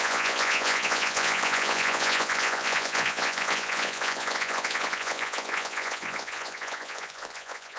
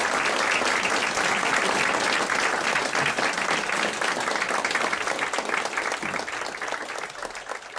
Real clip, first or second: second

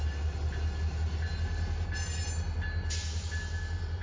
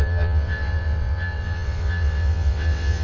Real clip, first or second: first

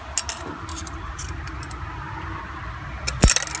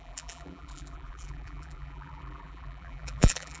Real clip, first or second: first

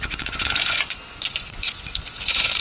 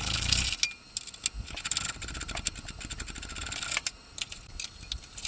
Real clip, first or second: second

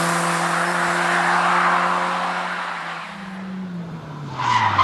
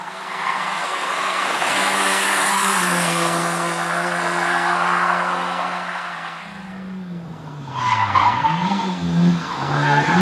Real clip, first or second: first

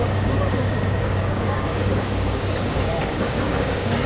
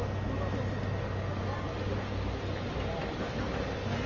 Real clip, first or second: second